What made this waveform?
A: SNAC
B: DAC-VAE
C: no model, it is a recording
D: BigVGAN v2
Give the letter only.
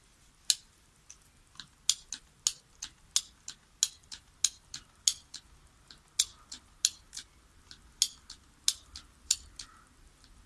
C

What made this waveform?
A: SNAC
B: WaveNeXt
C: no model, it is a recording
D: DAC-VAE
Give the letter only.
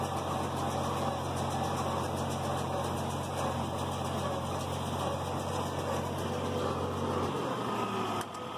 C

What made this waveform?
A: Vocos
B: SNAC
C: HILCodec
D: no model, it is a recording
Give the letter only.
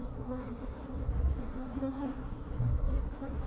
B